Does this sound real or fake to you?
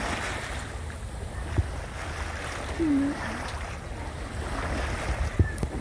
real